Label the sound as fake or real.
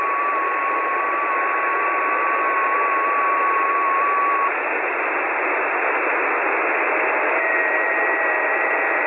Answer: real